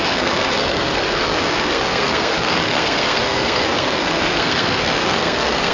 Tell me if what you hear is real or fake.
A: fake